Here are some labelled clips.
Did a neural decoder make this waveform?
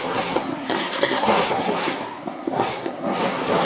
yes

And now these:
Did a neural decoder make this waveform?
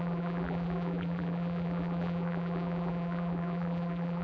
yes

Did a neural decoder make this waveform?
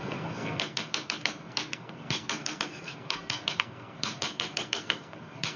yes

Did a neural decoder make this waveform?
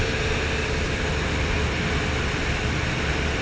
no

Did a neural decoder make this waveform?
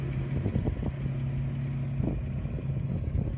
no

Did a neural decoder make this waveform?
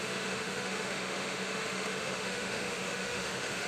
yes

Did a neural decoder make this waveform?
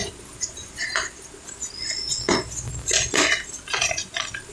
no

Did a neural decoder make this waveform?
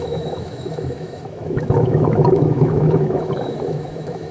yes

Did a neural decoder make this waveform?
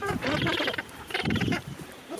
yes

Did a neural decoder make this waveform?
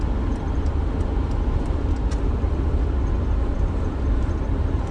no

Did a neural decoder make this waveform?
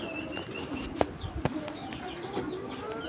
no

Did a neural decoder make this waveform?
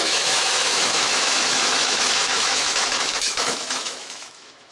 yes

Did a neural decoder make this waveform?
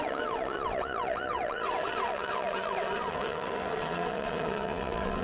yes